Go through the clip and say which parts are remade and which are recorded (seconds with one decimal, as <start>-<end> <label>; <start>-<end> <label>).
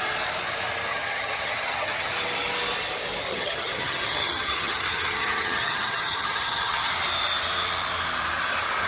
0.0-0.9 recorded; 0.9-2.1 remade; 2.1-3.3 recorded; 3.3-6.9 remade; 6.9-8.9 recorded